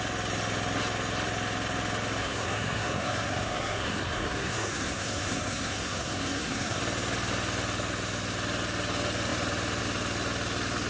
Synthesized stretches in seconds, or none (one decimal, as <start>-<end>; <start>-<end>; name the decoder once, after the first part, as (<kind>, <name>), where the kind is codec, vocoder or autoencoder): 2.2-6.8 (codec, SNAC)